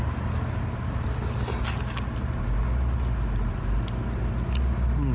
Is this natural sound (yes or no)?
yes